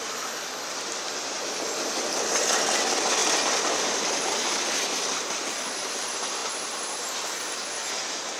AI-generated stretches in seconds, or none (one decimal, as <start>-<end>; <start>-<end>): none